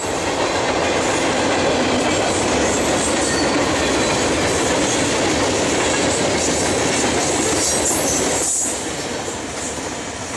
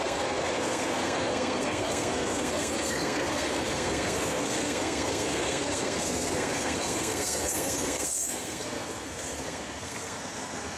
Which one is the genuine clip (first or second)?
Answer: first